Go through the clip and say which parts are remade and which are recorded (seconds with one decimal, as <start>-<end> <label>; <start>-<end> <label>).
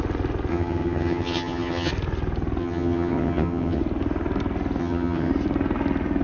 0.0-0.5 recorded; 0.5-1.9 remade; 1.9-2.6 recorded; 2.6-3.8 remade; 3.8-4.8 recorded; 4.8-5.3 remade; 5.3-6.2 recorded